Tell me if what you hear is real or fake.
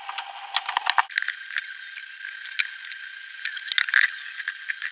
real